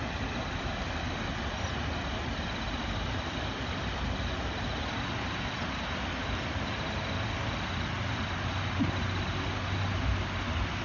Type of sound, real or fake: real